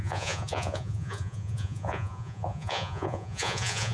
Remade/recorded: remade